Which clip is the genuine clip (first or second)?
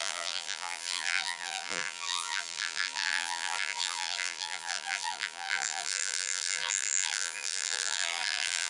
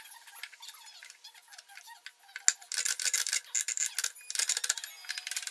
second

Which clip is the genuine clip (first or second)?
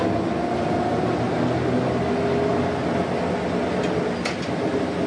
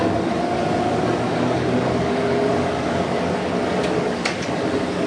first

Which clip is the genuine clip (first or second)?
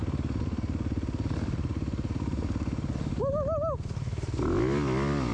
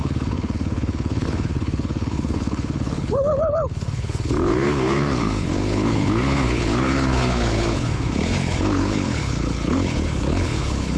first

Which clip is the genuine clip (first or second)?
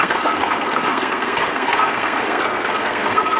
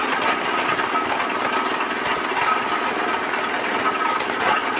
second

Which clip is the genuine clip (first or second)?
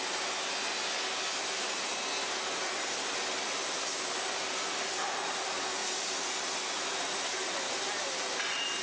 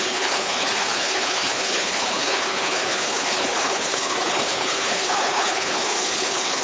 first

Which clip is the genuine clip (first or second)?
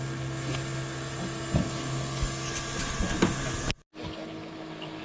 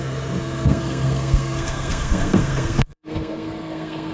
first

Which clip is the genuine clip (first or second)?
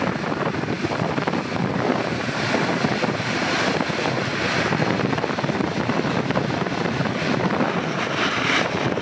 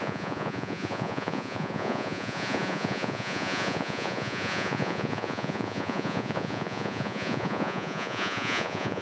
first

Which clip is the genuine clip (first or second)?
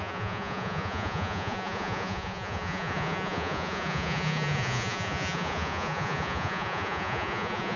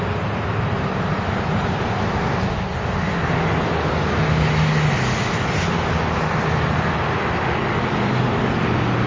second